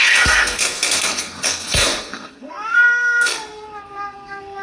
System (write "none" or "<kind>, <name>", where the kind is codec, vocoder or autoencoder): codec, SNAC